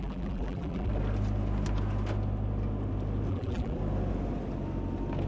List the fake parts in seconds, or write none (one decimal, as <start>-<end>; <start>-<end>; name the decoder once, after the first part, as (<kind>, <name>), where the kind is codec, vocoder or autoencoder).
0.0-0.9 (vocoder, BigVGAN v2); 3.3-3.8